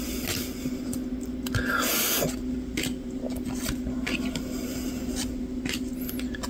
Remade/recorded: recorded